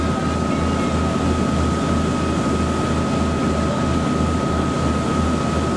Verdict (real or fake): real